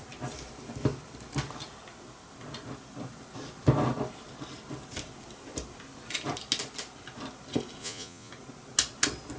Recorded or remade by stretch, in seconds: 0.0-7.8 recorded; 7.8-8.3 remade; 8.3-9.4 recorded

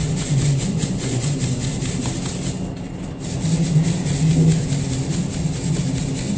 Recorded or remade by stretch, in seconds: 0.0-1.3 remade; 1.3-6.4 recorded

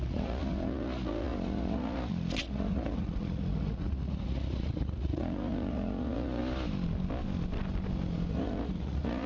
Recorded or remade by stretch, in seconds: 0.0-6.4 remade; 6.4-8.3 recorded; 8.3-9.3 remade